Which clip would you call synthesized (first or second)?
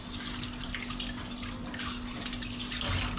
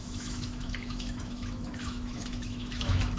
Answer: second